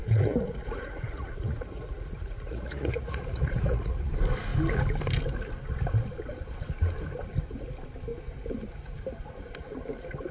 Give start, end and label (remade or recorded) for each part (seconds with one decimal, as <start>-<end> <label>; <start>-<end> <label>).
0.0-4.1 remade; 4.1-10.3 recorded